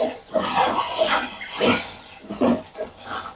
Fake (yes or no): yes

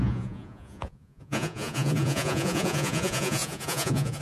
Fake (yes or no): yes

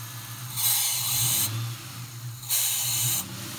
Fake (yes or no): no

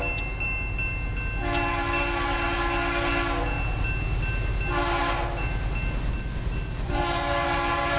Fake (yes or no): no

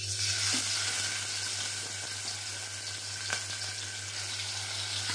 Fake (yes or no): no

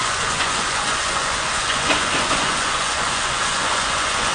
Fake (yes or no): yes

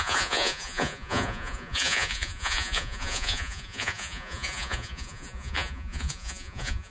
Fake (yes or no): yes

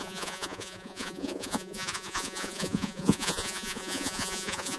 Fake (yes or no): yes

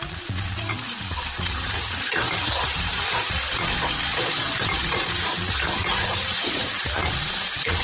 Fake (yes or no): yes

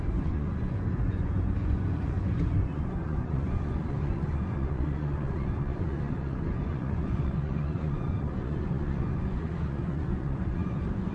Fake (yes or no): yes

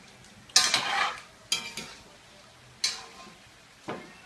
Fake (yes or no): no